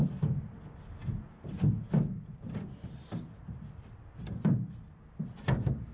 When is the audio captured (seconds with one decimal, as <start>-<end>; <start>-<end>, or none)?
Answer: 0.0-5.9

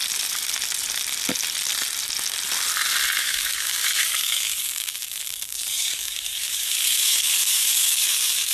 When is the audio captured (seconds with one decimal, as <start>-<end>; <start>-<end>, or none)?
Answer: 0.0-3.2

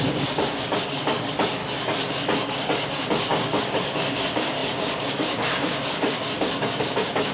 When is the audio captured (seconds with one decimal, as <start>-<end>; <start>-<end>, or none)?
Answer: 1.6-2.1

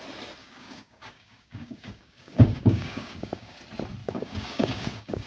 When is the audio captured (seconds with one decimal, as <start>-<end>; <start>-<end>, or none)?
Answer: 0.0-0.4; 3.6-4.0

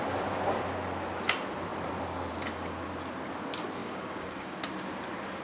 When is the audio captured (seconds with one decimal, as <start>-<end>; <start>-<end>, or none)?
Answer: 0.0-3.8; 4.6-5.4

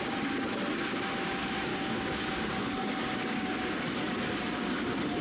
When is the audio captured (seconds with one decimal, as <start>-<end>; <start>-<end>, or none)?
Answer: 0.0-1.7; 3.9-5.2

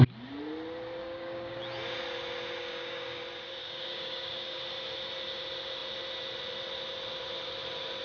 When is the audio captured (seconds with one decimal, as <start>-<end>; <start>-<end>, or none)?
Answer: 0.0-1.0; 1.6-2.6; 3.2-3.6; 4.6-8.0

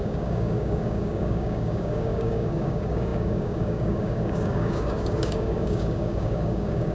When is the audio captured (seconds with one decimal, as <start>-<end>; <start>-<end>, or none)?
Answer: none